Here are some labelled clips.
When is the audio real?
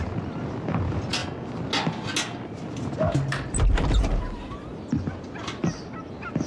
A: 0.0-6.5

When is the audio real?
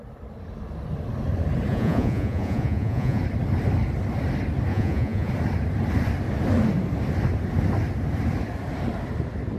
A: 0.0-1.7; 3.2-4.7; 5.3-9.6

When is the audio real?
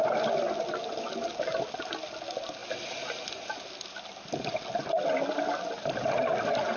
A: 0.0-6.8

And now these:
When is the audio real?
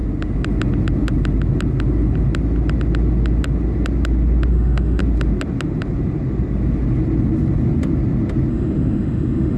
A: 0.0-4.5; 5.0-8.5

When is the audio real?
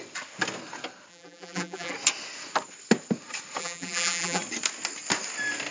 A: 0.0-1.1; 1.9-3.6; 4.4-5.7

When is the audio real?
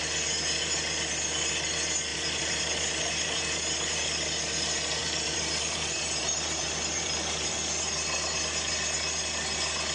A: 0.0-2.1; 3.4-5.0; 7.8-9.9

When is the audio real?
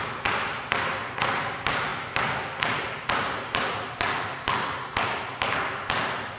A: 0.0-6.4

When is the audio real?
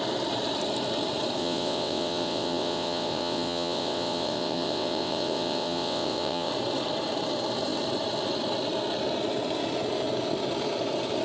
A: 0.0-1.4; 6.5-11.2